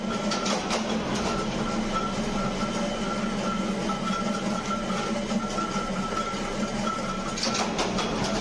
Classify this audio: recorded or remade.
recorded